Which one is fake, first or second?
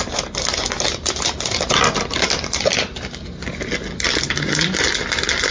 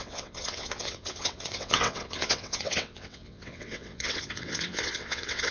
second